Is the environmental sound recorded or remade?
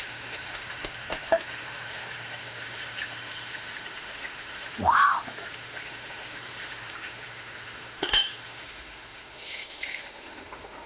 remade